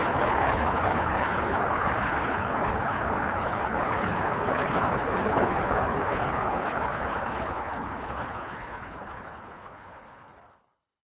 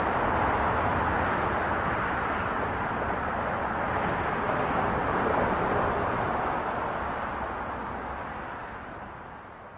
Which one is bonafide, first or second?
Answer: second